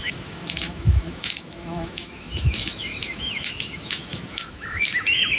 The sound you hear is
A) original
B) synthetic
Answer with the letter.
B